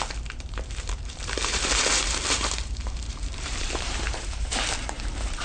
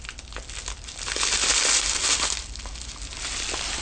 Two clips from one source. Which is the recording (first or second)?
second